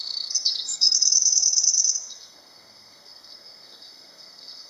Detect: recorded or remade remade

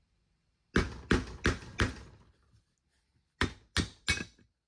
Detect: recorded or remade recorded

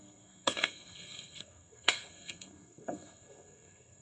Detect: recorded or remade remade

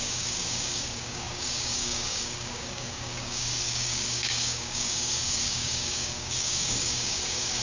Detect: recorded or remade remade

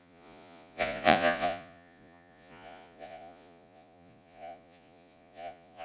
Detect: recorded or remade remade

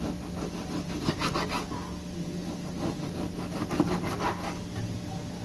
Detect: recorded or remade recorded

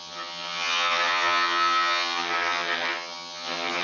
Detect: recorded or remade remade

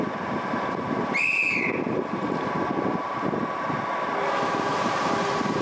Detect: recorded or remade recorded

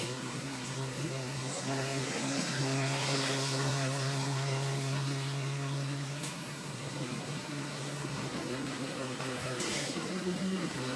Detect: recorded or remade remade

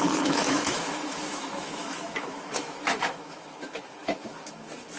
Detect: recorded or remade remade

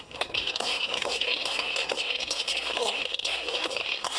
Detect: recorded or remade remade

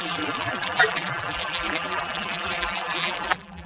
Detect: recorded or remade remade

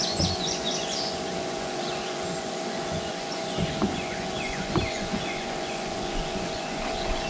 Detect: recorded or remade remade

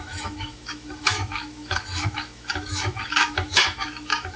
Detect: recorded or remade remade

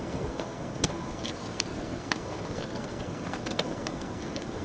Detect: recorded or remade remade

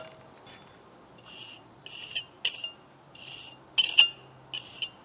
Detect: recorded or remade recorded